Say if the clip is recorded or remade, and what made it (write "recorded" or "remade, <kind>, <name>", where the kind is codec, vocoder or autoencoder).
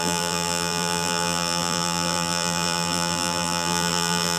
remade, vocoder, BigVGAN v2